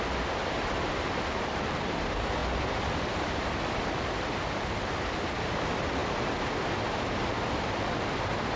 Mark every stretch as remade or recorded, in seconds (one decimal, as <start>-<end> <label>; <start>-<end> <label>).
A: 0.0-8.6 remade